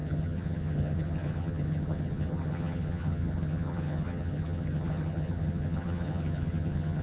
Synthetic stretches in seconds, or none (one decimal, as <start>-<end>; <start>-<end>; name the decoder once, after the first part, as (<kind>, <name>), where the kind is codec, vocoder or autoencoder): 0.0-7.0 (vocoder, HiFi-GAN)